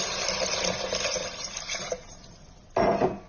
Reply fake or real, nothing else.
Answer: real